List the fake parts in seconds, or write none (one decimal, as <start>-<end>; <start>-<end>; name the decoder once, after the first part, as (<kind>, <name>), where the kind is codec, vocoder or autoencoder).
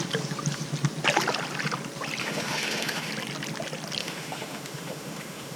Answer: 2.2-3.1 (autoencoder, DAC-VAE); 4.0-5.6